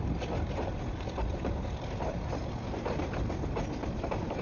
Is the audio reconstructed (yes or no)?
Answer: no